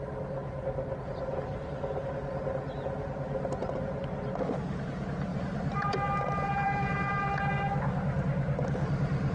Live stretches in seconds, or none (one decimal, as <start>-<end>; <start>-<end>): 0.0-5.3; 7.5-9.3